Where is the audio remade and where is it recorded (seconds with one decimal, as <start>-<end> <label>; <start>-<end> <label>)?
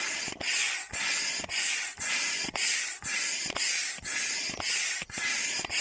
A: 0.0-0.6 recorded; 0.6-3.3 remade; 3.3-5.8 recorded